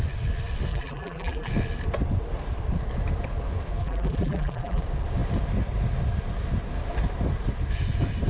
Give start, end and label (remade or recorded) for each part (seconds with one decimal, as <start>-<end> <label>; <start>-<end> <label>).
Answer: 0.0-0.7 recorded; 0.7-1.5 remade; 1.5-3.8 recorded; 3.8-4.8 remade; 4.8-8.3 recorded